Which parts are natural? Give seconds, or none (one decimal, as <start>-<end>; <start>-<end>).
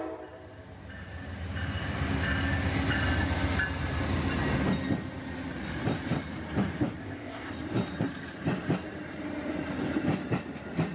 0.0-7.0; 7.5-10.9